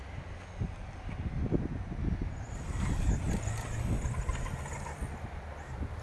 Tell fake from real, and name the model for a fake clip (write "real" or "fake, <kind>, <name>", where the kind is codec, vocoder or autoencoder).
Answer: real